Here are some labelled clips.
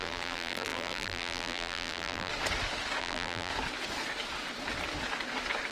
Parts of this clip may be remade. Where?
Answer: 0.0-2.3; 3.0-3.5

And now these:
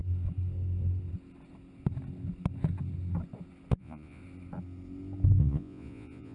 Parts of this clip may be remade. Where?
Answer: 3.8-4.2; 5.4-6.3

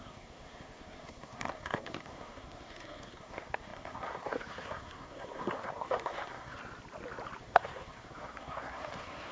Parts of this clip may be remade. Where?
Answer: 0.0-6.6; 7.4-9.3

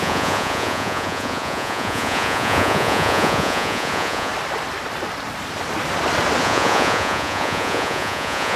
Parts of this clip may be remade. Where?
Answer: 0.0-4.3; 6.4-8.6